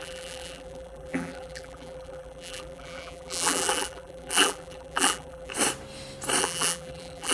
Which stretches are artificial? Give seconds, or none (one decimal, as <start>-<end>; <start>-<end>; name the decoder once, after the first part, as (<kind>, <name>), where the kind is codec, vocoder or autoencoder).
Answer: 0.0-5.5 (vocoder, BigVGAN v2); 6.4-7.3